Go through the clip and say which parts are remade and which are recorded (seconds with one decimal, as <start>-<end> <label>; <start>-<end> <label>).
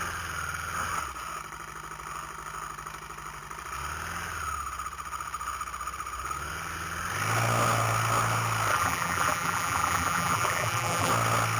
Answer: 0.0-8.7 recorded; 8.7-11.1 remade; 11.1-11.6 recorded